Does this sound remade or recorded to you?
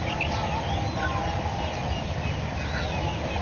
recorded